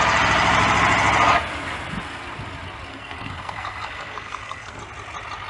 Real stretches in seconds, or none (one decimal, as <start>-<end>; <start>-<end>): 0.0-2.9; 4.8-5.5